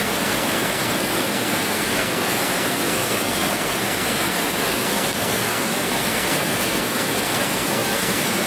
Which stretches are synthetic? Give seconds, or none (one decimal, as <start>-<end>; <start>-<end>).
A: 0.0-8.5